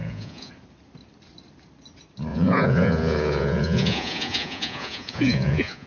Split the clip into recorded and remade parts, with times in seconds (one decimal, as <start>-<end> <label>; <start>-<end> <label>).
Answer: 0.0-0.5 remade; 0.5-2.3 recorded; 2.3-5.9 remade